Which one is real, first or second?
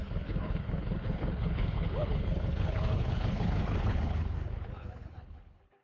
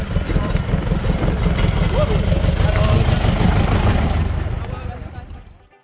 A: second